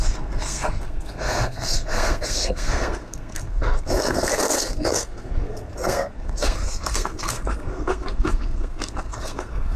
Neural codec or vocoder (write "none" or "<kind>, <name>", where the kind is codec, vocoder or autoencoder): codec, SNAC